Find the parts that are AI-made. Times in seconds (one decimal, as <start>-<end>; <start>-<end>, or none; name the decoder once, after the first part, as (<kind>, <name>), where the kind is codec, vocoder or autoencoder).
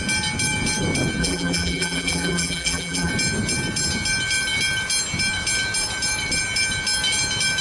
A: 1.2-3.1 (vocoder, BigVGAN v2)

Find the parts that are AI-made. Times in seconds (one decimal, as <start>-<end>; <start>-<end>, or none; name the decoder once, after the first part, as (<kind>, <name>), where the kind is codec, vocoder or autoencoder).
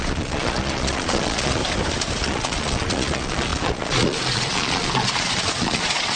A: 0.0-1.6 (vocoder, Vocos); 2.2-6.2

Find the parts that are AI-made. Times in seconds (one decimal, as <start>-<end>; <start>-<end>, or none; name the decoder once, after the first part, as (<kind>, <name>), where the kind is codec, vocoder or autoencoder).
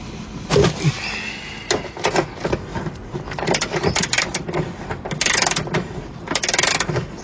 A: none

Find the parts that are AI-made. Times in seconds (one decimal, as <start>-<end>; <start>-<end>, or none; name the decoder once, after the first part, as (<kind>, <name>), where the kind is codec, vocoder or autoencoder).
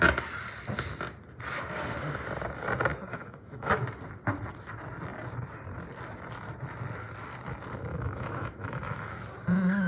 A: 3.1-3.8 (autoencoder, DAC-VAE); 7.9-9.1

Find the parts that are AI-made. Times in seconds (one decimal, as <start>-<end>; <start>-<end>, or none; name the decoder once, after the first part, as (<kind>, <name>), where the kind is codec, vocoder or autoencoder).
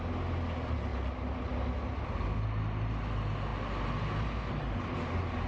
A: none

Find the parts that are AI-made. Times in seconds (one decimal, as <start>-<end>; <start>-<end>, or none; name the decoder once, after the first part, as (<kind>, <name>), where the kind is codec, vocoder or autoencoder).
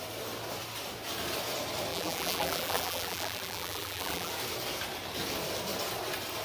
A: 1.9-4.3 (vocoder, BigVGAN v2)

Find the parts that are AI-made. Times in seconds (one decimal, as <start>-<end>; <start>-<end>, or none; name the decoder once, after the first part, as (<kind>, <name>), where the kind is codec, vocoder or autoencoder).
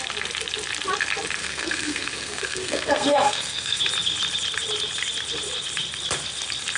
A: 1.4-3.8 (codec, SNAC)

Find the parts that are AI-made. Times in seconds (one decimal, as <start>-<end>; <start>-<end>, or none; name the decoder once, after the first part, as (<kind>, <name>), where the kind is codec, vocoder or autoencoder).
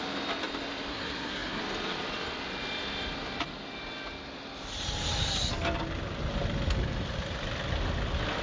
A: 0.9-1.6 (codec, SNAC)